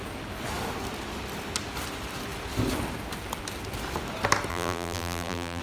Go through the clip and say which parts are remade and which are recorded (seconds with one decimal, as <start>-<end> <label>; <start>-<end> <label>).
0.0-4.5 recorded; 4.5-5.6 remade